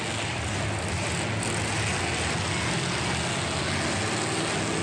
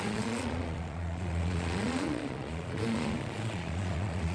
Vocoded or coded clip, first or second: second